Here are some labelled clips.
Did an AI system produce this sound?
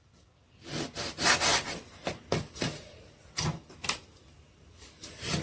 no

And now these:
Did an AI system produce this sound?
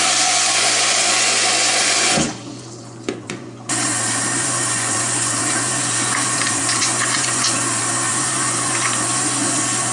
yes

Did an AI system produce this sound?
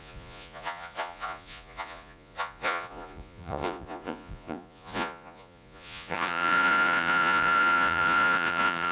yes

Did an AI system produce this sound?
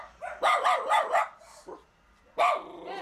no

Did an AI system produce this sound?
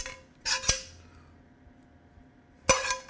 no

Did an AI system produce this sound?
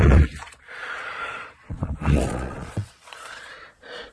yes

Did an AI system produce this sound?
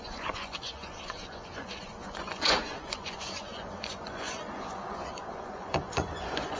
yes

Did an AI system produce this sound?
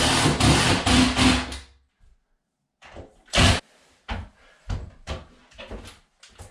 no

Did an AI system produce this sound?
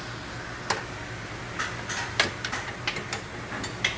no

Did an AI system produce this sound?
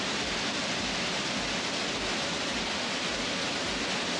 no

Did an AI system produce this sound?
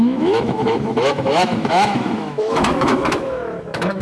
yes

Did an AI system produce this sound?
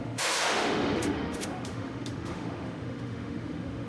yes